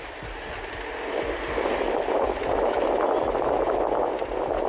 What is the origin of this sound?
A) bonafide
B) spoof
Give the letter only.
A